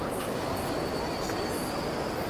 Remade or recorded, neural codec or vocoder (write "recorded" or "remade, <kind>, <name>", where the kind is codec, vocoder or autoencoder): recorded